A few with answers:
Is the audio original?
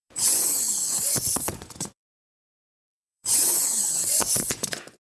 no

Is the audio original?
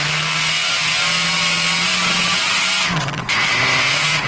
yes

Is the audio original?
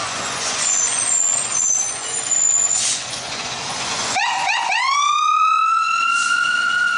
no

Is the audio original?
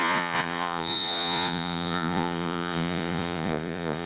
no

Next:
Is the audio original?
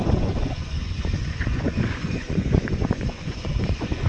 no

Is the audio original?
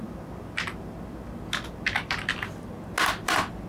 yes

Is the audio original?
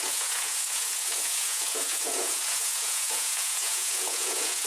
no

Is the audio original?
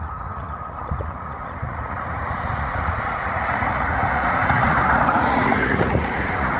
no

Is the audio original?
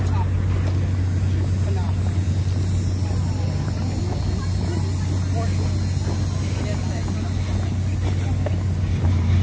yes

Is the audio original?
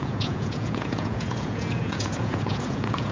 no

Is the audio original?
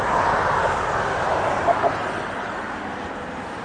yes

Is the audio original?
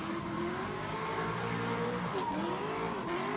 yes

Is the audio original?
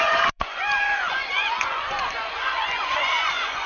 no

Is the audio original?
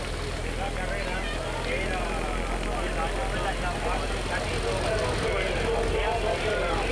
yes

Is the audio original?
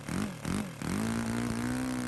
yes